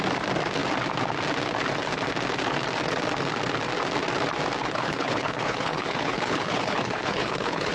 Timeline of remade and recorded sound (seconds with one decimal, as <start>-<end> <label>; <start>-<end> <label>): 0.0-4.6 recorded; 4.6-7.7 remade